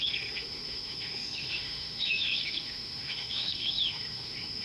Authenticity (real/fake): fake